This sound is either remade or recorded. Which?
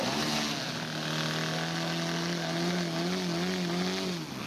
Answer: recorded